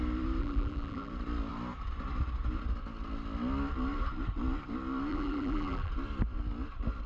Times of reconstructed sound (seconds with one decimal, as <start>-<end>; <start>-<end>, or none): 0.4-1.1; 5.1-5.9